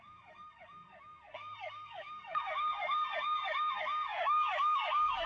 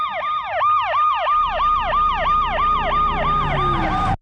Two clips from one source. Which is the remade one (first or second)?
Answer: first